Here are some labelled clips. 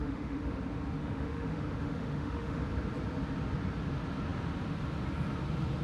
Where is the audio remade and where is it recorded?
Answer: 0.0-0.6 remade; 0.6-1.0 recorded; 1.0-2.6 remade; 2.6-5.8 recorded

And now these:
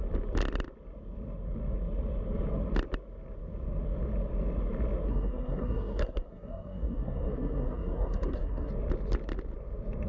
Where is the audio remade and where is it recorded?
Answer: 0.0-5.1 recorded; 5.1-8.7 remade; 8.7-10.1 recorded